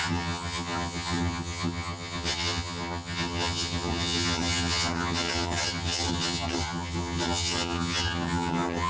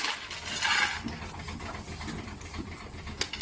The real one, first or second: second